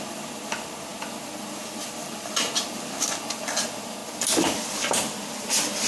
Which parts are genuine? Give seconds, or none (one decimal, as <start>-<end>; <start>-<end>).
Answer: 0.0-5.9